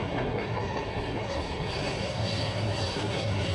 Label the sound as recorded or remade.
remade